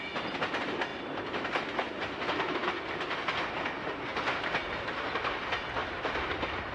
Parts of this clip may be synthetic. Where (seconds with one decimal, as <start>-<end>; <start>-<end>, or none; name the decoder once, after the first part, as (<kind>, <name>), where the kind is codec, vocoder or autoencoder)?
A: none